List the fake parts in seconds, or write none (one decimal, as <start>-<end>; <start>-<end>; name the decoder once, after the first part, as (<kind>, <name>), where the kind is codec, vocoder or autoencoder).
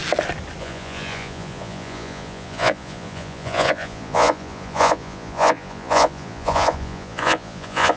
0.6-8.0 (vocoder, Vocos)